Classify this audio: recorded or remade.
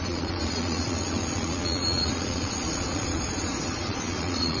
remade